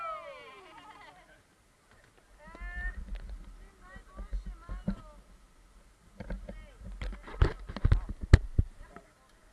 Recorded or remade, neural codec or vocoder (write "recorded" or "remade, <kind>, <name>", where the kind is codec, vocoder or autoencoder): recorded